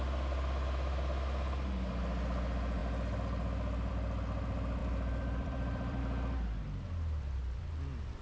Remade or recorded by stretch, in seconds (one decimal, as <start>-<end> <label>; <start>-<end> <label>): 0.0-4.8 recorded; 4.8-6.0 remade; 6.0-8.2 recorded